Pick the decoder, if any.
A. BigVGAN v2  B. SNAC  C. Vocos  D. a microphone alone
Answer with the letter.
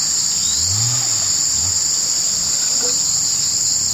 D